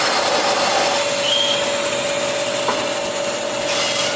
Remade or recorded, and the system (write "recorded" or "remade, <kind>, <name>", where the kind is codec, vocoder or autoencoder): recorded